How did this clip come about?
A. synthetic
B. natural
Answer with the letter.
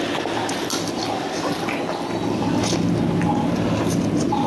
B